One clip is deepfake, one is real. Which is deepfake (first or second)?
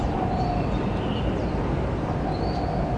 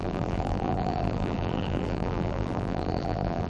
second